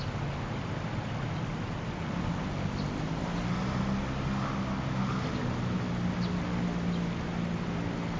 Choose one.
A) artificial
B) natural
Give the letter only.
B